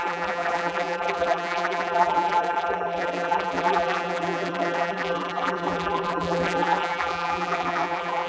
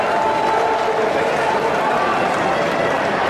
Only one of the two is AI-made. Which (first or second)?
first